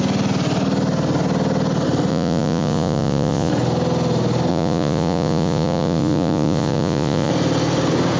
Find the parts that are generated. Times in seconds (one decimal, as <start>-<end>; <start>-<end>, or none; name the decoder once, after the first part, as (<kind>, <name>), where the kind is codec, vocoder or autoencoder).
2.1-3.5 (vocoder, Vocos); 4.5-7.3